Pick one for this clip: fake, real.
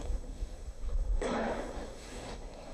fake